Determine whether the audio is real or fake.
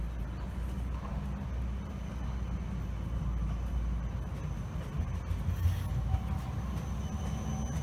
real